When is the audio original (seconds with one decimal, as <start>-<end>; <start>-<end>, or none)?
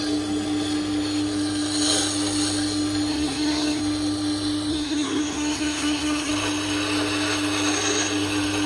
0.0-3.1; 3.8-4.7; 6.3-8.7